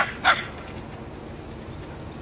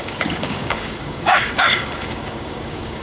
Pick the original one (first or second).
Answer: first